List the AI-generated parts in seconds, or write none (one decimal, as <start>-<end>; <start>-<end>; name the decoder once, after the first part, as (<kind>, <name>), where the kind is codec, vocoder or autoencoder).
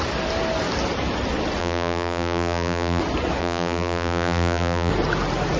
1.6-3.0 (vocoder, BigVGAN v2); 3.4-4.9